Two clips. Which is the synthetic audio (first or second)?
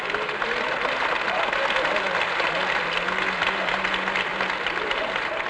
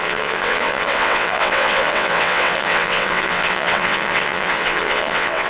second